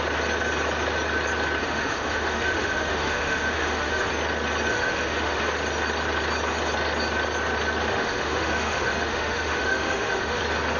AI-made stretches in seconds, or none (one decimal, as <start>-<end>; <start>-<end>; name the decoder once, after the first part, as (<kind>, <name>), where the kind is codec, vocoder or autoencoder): 1.6-4.1 (autoencoder, DAC-VAE); 4.7-5.4; 7.9-10.4